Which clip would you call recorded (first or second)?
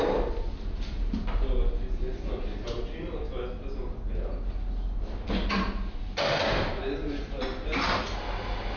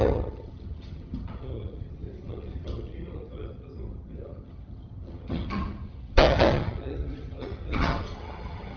first